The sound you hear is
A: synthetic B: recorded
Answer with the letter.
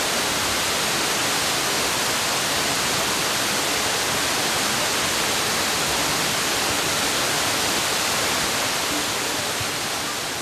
B